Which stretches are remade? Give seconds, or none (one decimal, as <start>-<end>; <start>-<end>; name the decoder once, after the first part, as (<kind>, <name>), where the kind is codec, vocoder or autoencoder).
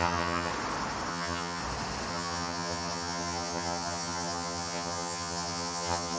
0.0-0.5 (vocoder, HiFi-GAN); 1.1-1.6; 2.1-6.2